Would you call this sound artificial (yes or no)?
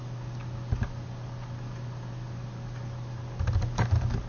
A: no